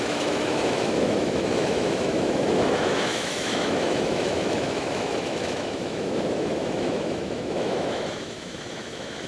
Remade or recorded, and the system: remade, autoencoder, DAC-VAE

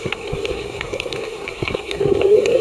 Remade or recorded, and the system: remade, codec, SNAC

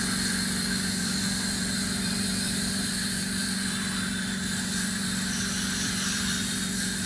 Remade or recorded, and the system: remade, vocoder, BigVGAN v2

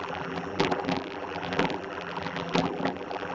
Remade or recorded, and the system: remade, vocoder, BigVGAN v2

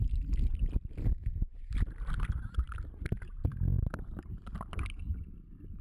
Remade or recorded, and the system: recorded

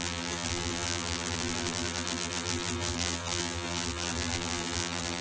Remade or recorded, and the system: remade, vocoder, BigVGAN v2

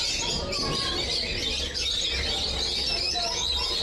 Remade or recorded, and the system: recorded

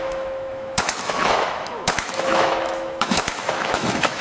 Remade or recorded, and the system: remade, autoencoder, DAC-VAE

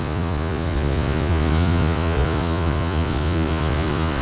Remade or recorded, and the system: remade, vocoder, Vocos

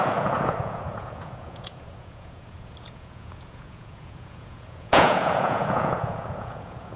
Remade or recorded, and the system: remade, vocoder, Vocos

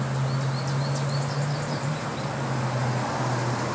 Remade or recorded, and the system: recorded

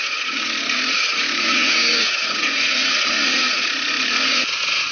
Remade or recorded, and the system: remade, vocoder, Vocos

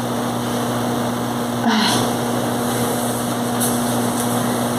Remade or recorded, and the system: recorded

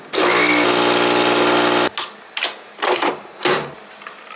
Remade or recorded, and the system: recorded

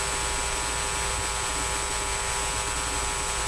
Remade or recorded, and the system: recorded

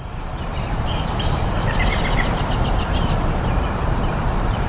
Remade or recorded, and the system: remade, vocoder, BigVGAN v2